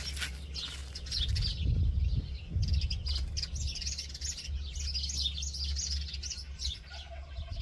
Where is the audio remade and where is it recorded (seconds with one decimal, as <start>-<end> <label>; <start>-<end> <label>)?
0.0-7.6 recorded

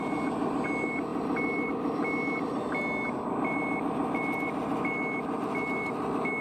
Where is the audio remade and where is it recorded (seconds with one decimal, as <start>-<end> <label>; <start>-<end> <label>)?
0.0-6.4 recorded